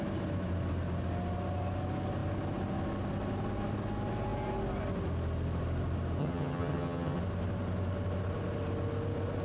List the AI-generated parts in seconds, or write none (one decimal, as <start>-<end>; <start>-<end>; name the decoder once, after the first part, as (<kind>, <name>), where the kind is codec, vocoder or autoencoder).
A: 6.2-7.2 (vocoder, HiFi-GAN)